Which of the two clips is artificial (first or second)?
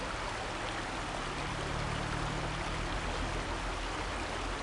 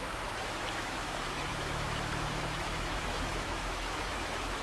second